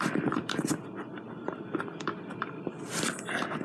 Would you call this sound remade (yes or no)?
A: yes